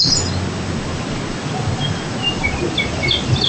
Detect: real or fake real